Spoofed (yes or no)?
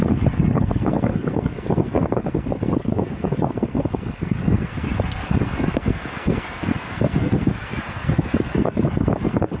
yes